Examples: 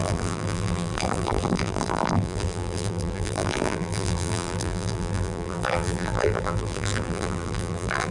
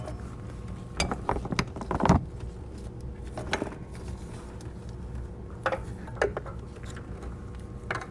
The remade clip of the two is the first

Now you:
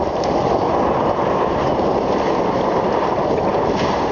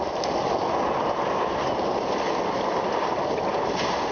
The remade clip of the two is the first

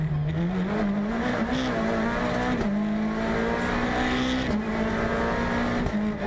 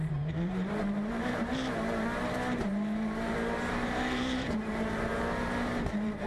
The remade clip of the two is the second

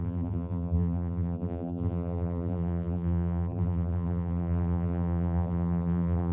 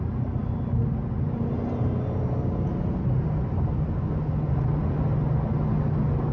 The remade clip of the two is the first